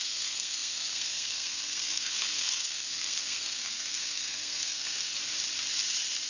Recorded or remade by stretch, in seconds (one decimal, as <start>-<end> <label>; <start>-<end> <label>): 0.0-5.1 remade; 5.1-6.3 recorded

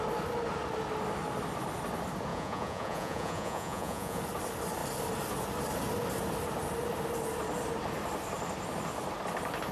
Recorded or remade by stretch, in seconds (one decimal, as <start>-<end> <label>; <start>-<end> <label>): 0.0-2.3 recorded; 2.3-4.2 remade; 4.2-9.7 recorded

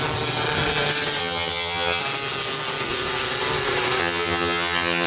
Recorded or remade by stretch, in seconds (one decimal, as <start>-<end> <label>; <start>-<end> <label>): 0.0-1.2 recorded; 1.2-2.0 remade; 2.0-4.0 recorded; 4.0-5.1 remade

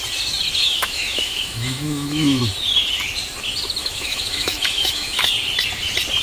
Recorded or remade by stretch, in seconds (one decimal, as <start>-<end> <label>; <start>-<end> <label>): 0.0-0.6 recorded; 0.6-2.4 remade; 2.4-3.8 recorded; 3.8-5.3 remade; 5.3-6.2 recorded